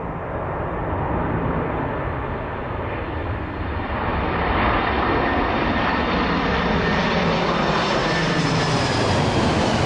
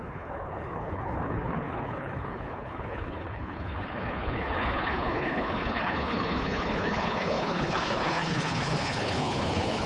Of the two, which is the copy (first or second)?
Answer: second